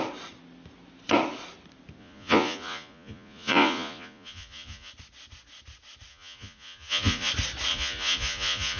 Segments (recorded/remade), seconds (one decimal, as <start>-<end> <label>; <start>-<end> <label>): 0.0-2.0 recorded; 2.0-4.9 remade; 4.9-6.1 recorded; 6.1-7.3 remade; 7.3-7.7 recorded; 7.7-8.8 remade